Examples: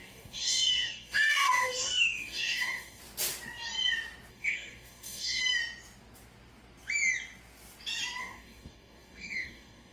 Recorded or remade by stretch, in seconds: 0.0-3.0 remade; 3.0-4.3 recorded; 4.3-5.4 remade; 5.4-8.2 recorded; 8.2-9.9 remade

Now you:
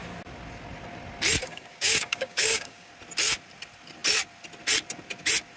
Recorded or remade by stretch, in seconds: 0.0-1.4 recorded; 1.4-2.9 remade; 2.9-5.6 recorded

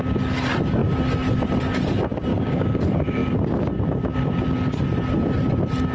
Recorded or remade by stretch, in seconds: 0.0-2.3 recorded; 2.3-2.8 remade; 2.8-5.9 recorded